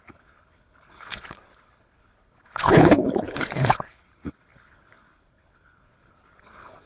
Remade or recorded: remade